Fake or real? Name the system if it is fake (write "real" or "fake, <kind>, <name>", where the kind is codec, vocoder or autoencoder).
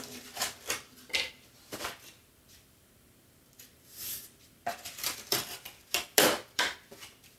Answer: fake, vocoder, BigVGAN v2